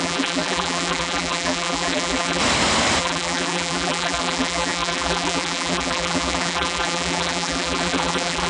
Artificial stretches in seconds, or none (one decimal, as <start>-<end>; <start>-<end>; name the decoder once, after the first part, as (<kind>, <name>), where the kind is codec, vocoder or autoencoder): 0.0-2.4 (vocoder, BigVGAN v2); 3.0-8.5